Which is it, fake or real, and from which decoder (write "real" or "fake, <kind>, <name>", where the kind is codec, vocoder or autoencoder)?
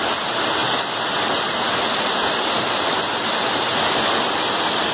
real